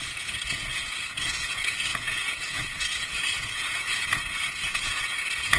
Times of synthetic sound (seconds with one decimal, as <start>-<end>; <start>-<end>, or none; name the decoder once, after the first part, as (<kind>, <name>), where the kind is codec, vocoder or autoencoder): 0.0-5.6 (vocoder, Vocos)